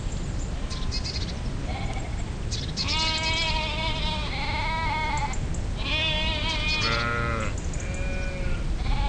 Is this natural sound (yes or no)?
yes